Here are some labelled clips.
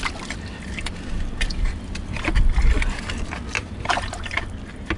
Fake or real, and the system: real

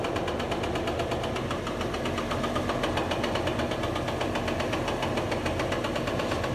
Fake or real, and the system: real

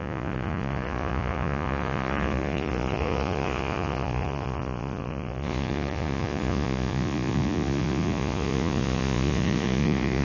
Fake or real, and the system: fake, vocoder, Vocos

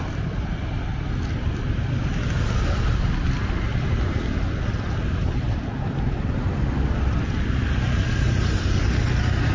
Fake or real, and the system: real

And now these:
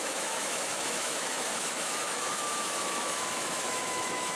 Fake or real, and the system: fake, autoencoder, DAC-VAE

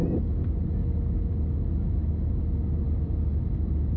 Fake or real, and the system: real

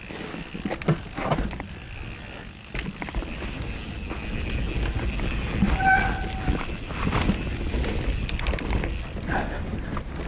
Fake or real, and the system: real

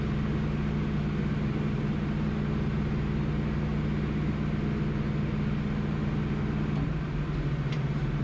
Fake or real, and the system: real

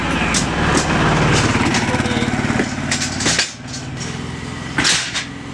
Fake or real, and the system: real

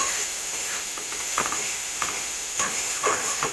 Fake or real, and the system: fake, autoencoder, DAC-VAE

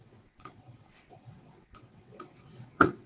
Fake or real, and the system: fake, vocoder, WaveNeXt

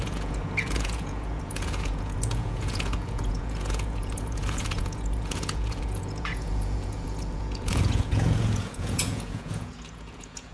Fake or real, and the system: fake, vocoder, Vocos